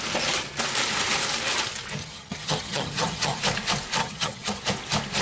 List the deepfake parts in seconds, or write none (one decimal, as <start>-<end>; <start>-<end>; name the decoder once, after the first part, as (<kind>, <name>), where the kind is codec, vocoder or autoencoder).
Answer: 2.0-3.4 (vocoder, HiFi-GAN); 4.0-4.6